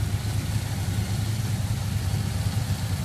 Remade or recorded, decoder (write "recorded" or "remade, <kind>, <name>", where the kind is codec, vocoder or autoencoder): recorded